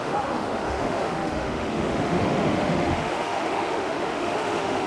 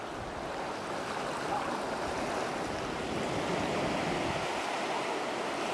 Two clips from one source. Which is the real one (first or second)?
second